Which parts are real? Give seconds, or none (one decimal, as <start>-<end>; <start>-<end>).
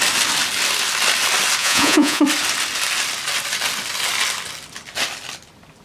0.0-1.6; 2.2-5.8